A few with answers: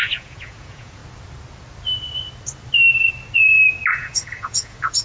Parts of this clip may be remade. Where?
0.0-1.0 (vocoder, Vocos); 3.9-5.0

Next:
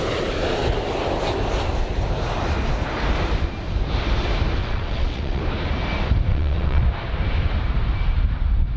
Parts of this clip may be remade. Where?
4.6-5.4 (vocoder, WaveNeXt); 6.3-6.8

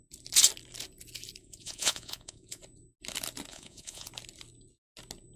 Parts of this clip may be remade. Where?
1.4-2.6 (vocoder, Vocos); 3.5-4.1

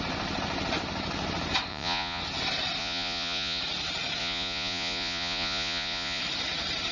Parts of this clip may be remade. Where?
1.7-2.2 (vocoder, Vocos); 2.8-3.6; 4.2-6.2

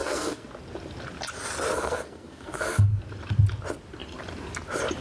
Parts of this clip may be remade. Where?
0.0-0.5 (codec, SNAC); 1.7-3.0

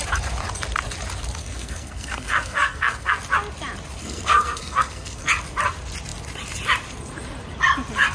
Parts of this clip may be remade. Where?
1.4-3.2 (codec, SNAC); 4.0-5.3

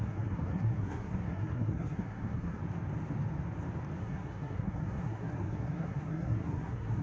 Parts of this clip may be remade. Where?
0.0-2.6 (codec, SNAC); 4.0-7.0